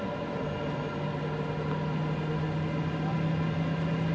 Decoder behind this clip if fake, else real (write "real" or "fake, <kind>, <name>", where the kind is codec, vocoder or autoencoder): real